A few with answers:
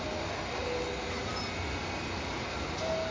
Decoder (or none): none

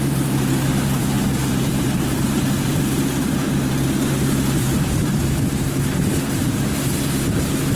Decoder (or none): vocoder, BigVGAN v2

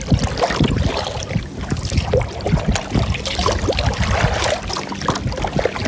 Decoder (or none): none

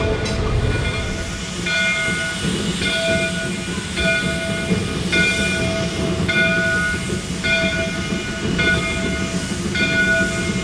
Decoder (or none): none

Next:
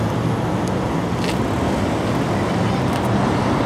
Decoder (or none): none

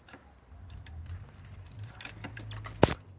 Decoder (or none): vocoder, BigVGAN v2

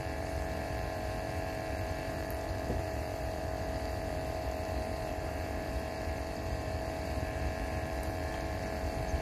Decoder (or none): vocoder, BigVGAN v2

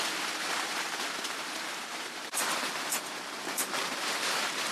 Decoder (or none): vocoder, BigVGAN v2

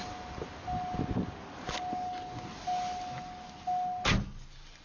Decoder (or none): none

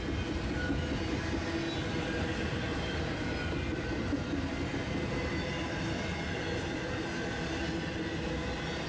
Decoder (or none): none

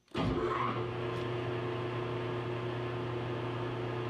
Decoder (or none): none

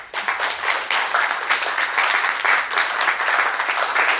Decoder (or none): none